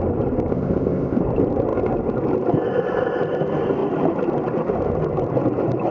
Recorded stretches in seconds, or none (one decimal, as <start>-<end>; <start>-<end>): 0.0-0.5; 1.2-5.9

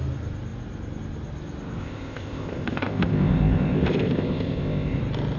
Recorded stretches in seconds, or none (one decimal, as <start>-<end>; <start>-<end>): 0.0-1.8; 5.0-5.4